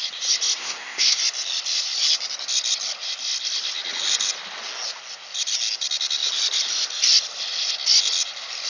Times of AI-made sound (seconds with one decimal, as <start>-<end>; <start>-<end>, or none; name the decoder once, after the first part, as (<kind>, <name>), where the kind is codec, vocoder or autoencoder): 0.6-1.2 (codec, ZipCodec)